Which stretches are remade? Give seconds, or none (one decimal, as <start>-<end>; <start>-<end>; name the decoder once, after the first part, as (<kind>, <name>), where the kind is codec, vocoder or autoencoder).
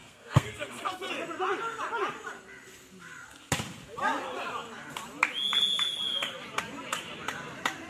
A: 0.0-1.1 (codec, SNAC)